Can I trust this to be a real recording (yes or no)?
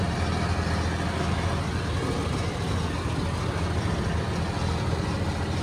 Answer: yes